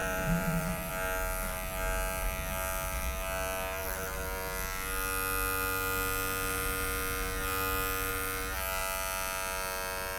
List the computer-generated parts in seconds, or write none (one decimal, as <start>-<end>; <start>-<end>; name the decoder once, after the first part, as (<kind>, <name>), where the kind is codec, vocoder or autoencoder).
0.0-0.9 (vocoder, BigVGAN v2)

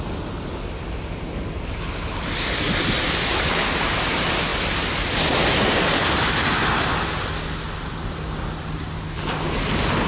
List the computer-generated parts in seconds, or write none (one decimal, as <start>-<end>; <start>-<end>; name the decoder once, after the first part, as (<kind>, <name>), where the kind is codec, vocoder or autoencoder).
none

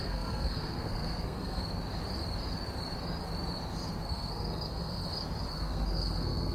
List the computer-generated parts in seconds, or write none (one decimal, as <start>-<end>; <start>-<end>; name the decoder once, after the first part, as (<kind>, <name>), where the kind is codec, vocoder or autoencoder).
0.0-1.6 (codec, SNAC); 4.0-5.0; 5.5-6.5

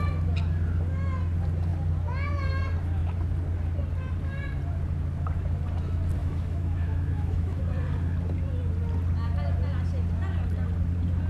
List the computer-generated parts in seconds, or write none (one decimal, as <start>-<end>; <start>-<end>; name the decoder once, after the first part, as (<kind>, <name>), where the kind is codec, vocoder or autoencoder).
6.2-7.6 (autoencoder, DAC-VAE)

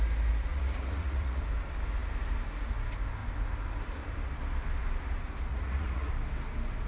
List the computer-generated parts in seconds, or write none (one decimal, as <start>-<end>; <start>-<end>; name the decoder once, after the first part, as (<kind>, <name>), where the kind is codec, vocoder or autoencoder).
0.5-1.4 (vocoder, Vocos); 5.5-6.1

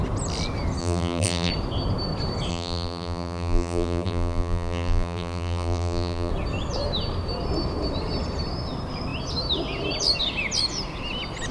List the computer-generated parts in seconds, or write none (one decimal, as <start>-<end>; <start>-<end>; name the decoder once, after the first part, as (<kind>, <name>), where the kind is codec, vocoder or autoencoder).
0.8-1.5 (vocoder, BigVGAN v2); 2.5-6.3

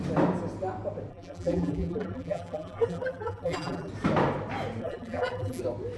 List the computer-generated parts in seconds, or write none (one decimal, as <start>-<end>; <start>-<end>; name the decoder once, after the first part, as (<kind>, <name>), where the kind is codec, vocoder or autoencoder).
1.1-3.9 (vocoder, BigVGAN v2); 4.8-5.6